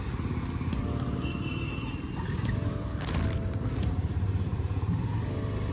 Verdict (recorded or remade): recorded